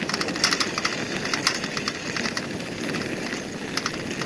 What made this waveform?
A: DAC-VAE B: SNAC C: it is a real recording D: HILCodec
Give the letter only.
C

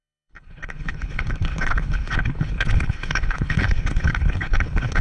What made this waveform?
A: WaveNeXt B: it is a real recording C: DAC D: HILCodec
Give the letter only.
D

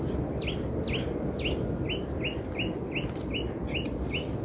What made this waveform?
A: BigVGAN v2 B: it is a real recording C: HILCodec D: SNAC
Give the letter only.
B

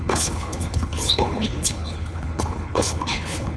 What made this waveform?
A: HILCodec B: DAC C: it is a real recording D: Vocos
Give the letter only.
A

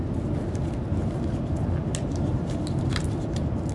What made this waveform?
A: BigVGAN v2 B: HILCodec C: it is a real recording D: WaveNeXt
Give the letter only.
C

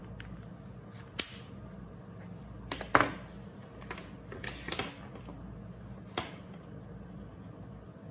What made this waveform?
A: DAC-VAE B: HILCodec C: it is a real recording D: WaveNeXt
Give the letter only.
C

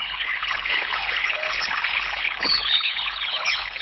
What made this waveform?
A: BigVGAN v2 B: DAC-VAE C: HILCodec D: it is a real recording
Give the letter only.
C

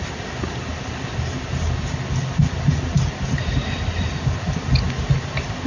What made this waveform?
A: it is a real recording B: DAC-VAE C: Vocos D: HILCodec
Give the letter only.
A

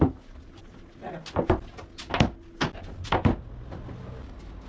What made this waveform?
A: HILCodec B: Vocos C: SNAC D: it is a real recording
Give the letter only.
D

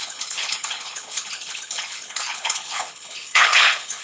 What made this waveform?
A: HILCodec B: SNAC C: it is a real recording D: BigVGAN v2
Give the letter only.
A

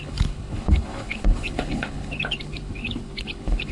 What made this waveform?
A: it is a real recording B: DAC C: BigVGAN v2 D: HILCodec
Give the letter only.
D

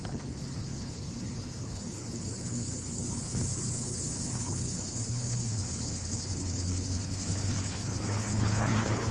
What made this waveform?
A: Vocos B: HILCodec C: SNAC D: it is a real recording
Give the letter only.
B